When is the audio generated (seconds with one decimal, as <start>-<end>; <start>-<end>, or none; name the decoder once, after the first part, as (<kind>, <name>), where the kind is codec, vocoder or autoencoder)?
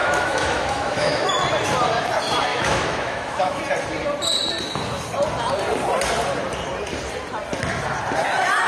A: 0.0-1.3 (autoencoder, DAC-VAE); 2.5-3.6